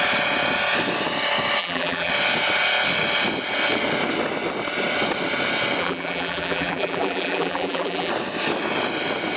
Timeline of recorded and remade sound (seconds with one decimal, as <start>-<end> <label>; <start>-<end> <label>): 0.0-1.6 recorded; 1.6-2.1 remade; 2.1-5.8 recorded; 5.8-8.1 remade; 8.1-9.4 recorded